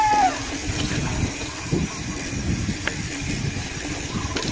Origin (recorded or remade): recorded